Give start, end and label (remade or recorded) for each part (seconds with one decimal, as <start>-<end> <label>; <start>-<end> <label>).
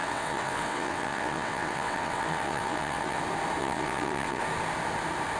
0.0-3.2 remade; 3.2-3.6 recorded; 3.6-4.4 remade; 4.4-5.4 recorded